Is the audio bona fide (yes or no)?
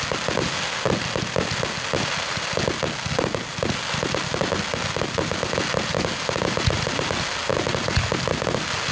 yes